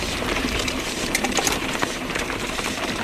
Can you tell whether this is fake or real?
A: fake